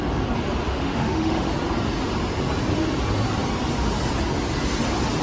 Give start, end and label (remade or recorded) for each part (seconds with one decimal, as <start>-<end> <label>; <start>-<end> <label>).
0.0-0.7 recorded; 0.7-1.5 remade; 1.5-5.2 recorded